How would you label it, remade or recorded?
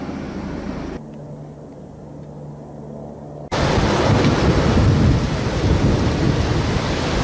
recorded